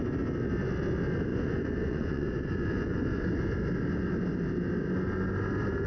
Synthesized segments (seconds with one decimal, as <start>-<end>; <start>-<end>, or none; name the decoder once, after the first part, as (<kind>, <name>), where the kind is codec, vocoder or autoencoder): 1.3-3.3 (vocoder, Vocos)